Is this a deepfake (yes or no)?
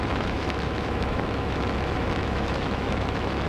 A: yes